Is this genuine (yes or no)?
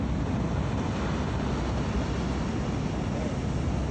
yes